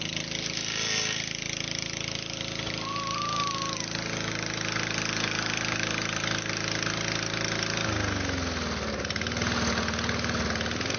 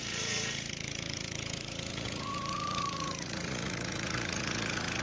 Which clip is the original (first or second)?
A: first